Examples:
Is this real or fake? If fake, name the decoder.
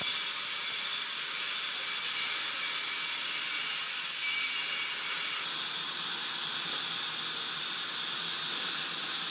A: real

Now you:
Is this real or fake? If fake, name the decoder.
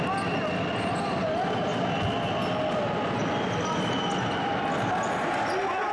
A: real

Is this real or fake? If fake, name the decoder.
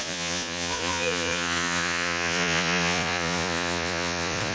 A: fake, vocoder, Vocos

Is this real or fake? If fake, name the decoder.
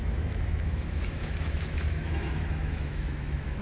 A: fake, autoencoder, DAC-VAE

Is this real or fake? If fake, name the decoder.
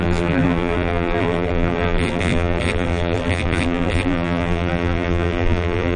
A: fake, vocoder, BigVGAN v2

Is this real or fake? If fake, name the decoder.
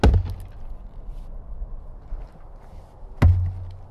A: real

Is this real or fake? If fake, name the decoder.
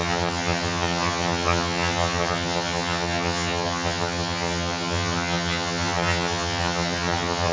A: fake, vocoder, HiFi-GAN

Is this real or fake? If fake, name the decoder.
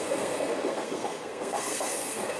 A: fake, codec, SNAC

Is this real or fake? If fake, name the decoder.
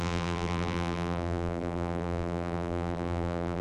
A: fake, vocoder, BigVGAN v2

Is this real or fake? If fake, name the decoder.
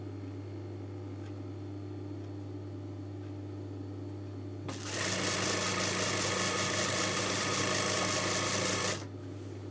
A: real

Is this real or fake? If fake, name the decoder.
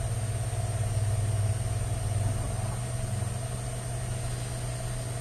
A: real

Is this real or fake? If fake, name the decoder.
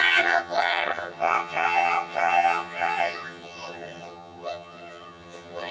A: fake, vocoder, HiFi-GAN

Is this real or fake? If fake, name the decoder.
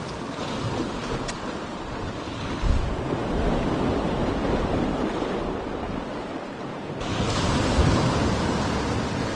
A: real